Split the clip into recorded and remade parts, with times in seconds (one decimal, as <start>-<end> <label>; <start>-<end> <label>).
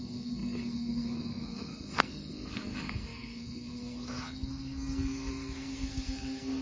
0.0-6.6 remade